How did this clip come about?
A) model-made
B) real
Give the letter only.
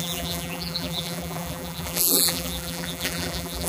A